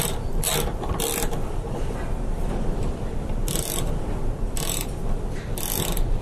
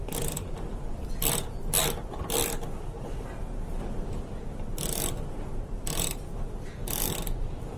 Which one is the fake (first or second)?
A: first